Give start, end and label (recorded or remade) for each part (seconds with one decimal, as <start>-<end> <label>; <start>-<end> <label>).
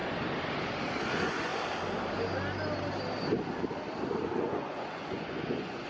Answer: 0.0-1.1 recorded; 1.1-1.5 remade; 1.5-4.4 recorded; 4.4-5.9 remade